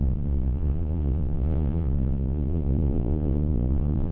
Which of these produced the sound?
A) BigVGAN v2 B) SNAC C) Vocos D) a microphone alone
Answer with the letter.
C